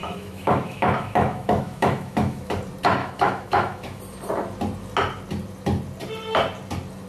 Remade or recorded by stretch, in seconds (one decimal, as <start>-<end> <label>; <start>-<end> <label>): 0.0-2.5 remade; 2.5-3.0 recorded; 3.0-4.0 remade; 4.0-7.1 recorded